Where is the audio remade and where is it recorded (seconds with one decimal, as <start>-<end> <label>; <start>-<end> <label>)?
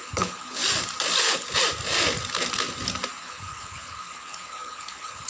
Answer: 0.0-0.6 remade; 0.6-1.2 recorded; 1.2-1.6 remade; 1.6-3.2 recorded; 3.2-5.3 remade